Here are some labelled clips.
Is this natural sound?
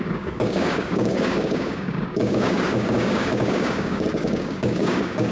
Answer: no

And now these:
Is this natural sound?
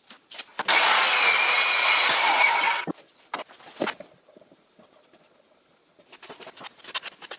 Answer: yes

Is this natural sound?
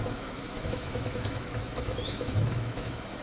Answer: no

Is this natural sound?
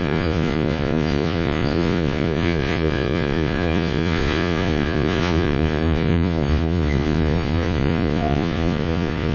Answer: no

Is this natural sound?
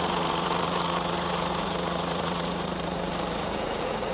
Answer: no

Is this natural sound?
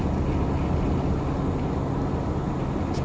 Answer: yes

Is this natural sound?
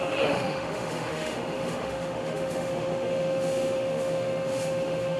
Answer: no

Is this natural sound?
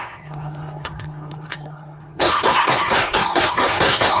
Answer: no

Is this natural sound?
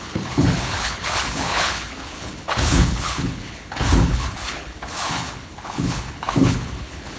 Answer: no